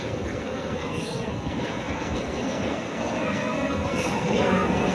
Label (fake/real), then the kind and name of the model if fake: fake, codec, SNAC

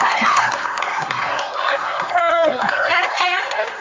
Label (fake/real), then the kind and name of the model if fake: fake, codec, SNAC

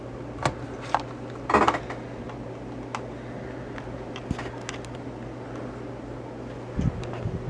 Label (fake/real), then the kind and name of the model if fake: real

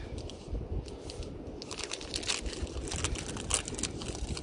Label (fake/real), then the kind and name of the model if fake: real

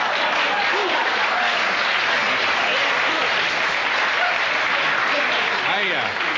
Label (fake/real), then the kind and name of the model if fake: real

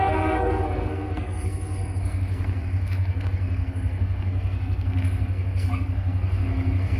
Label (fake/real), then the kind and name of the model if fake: fake, codec, SNAC